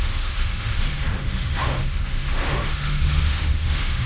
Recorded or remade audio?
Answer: remade